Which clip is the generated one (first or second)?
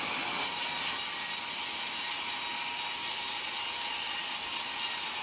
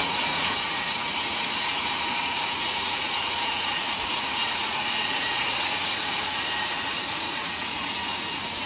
second